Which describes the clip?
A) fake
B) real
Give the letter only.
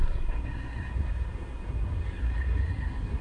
A